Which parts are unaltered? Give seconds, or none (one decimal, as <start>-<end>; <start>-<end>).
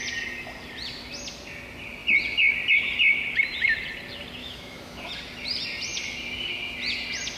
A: 0.0-4.4; 5.1-7.4